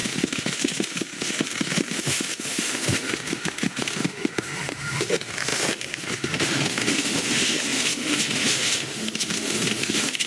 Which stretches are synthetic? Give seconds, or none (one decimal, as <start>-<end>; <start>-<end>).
0.0-10.3